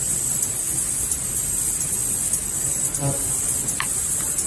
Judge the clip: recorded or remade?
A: recorded